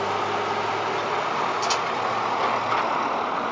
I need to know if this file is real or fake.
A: real